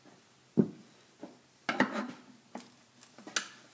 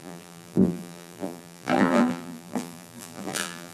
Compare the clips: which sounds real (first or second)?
first